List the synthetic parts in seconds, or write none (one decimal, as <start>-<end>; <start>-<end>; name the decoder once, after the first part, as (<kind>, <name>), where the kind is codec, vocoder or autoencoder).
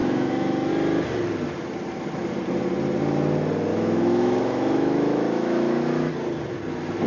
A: 0.0-0.7 (autoencoder, DAC-VAE); 3.7-6.1